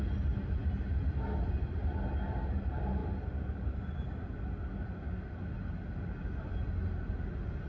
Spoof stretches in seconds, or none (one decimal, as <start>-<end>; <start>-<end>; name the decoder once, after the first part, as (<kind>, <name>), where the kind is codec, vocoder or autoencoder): none